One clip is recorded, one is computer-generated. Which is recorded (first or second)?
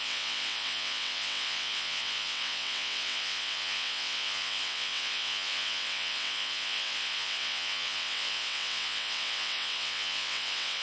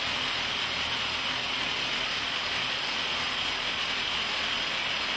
second